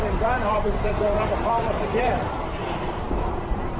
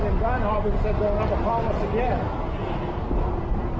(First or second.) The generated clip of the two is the first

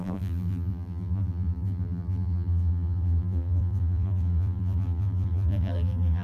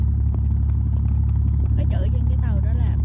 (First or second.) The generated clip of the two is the first